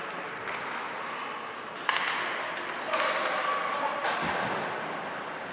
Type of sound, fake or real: real